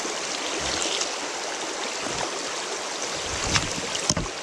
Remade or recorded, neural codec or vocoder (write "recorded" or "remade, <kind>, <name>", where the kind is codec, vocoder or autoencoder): recorded